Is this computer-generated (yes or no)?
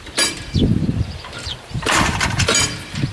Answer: yes